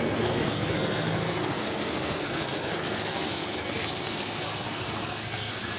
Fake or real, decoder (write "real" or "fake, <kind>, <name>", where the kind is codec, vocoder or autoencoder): fake, codec, SNAC